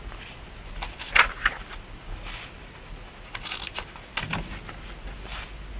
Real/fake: real